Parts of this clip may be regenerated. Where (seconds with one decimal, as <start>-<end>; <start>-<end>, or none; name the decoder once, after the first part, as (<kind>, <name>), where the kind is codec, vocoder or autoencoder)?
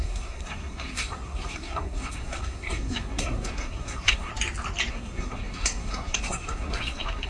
0.0-4.3 (codec, SNAC); 4.9-7.3